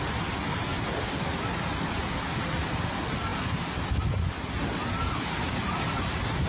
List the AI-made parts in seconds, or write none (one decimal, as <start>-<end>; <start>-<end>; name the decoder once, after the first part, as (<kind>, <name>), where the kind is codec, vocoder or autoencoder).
none